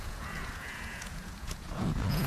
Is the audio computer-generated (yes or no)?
yes